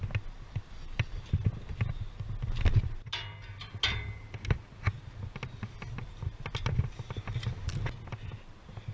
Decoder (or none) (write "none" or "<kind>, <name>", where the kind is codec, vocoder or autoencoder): none